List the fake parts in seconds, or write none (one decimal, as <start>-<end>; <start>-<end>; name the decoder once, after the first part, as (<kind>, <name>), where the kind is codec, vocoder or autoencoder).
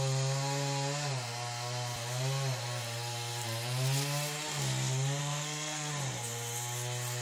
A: 5.2-5.9 (codec, SNAC)